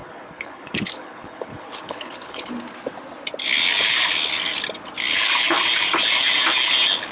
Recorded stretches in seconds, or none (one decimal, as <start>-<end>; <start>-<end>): 2.5-7.1